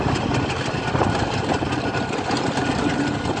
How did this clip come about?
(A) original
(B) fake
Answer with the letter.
A